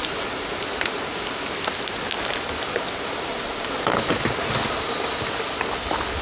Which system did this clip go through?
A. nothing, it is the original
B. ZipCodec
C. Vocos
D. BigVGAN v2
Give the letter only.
A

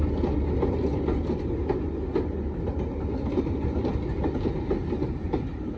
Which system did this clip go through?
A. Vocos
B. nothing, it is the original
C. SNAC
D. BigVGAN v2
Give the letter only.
B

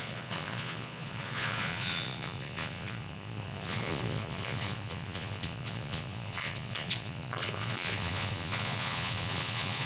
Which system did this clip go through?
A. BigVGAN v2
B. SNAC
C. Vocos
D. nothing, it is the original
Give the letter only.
C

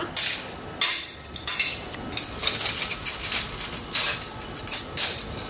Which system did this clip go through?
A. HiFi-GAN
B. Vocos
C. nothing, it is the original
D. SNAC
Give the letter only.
C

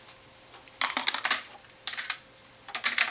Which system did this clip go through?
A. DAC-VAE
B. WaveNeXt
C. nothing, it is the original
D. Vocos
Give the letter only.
C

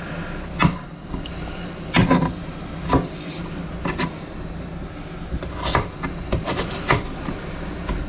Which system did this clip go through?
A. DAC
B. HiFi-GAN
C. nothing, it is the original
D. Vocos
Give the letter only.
C